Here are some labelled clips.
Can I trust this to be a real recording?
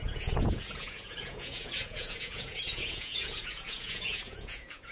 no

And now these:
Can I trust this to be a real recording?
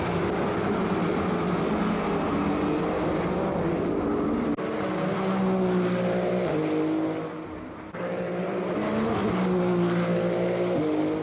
yes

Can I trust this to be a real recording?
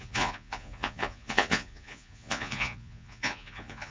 no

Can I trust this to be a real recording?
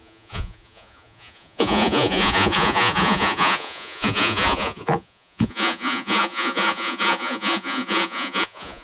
no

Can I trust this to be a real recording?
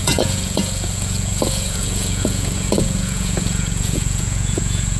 no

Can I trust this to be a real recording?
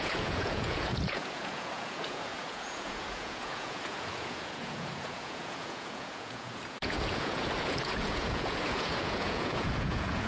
no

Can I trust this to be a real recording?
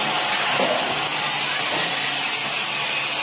yes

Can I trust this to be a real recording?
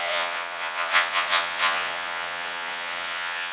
no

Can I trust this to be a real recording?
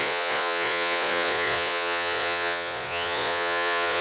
no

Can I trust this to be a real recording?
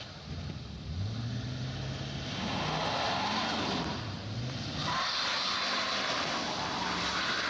yes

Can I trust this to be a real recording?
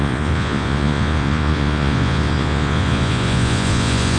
no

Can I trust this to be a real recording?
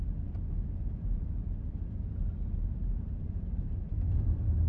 yes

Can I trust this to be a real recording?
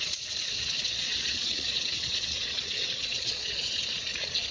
no